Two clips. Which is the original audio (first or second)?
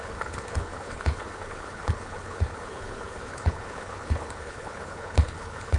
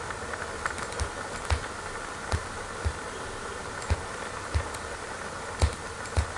second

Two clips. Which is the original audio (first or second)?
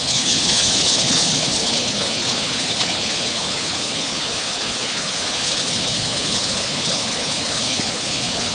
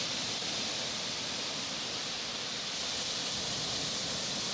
second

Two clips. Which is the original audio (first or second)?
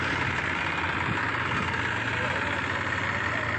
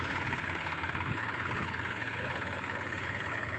first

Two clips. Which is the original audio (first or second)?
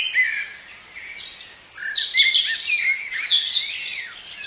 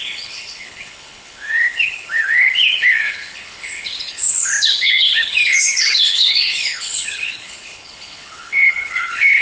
first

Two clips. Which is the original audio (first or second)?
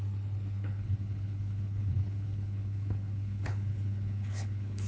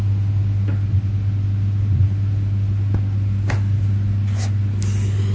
second